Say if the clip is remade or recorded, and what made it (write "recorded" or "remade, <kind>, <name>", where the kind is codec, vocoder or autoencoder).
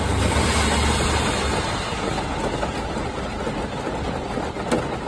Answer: recorded